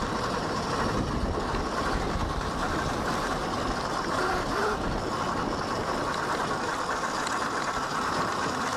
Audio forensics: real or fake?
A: real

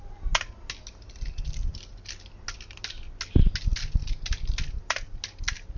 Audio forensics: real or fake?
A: real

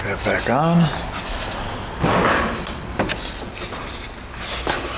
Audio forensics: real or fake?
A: real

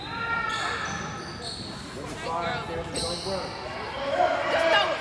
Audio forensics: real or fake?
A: real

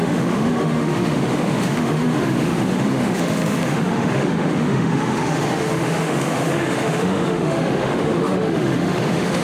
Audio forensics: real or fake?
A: fake